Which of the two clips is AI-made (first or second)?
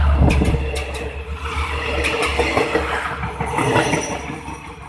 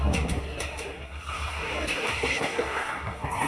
second